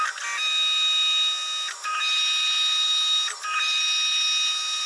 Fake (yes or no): no